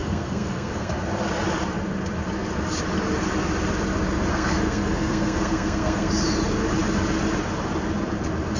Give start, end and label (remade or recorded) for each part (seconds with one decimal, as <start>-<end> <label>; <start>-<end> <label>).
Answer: 0.0-1.0 remade; 1.0-4.3 recorded; 4.3-6.1 remade; 6.1-8.6 recorded